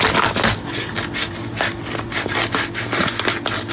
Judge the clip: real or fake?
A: real